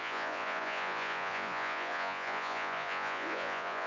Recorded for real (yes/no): no